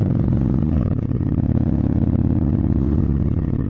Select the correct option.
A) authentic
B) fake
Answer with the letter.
B